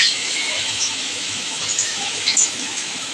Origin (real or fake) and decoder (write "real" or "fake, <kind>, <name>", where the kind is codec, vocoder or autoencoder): fake, autoencoder, DAC-VAE